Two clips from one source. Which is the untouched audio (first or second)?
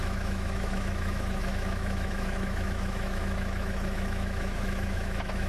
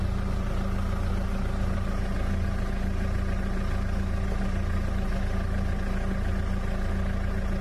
second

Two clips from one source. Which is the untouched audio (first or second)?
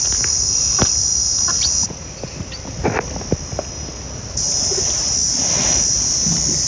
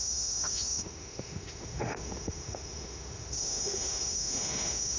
first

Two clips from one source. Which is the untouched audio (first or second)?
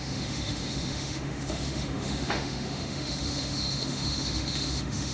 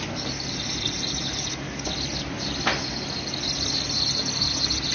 second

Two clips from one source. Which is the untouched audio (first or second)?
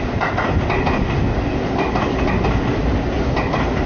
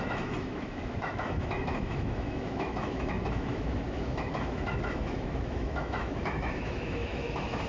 first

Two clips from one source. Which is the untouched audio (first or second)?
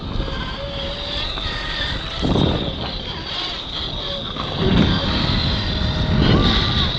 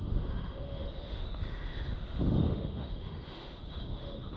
first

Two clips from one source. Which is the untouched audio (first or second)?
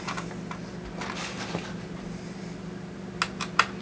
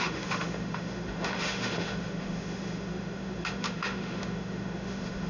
first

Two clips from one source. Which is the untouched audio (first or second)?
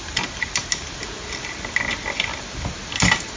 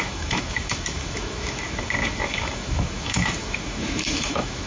first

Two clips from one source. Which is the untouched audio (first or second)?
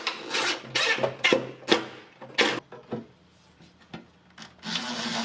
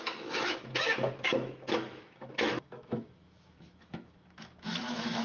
first